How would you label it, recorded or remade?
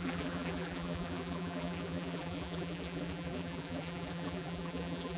remade